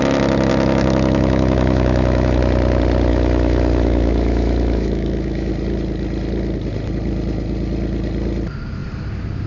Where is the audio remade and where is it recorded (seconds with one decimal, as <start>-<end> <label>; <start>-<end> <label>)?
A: 0.0-0.5 recorded; 0.5-2.4 remade; 2.4-3.1 recorded; 3.1-5.5 remade; 5.5-9.5 recorded